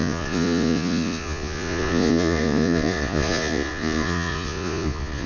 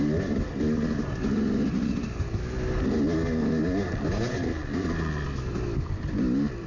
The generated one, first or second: first